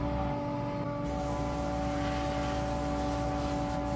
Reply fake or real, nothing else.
real